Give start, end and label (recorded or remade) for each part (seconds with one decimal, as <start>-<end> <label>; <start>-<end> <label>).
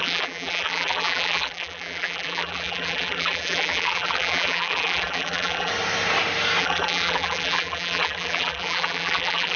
0.0-5.7 remade; 5.7-6.6 recorded; 6.6-9.6 remade